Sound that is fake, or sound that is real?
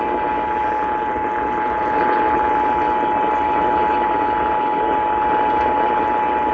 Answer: real